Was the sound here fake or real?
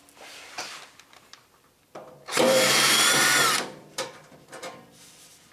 fake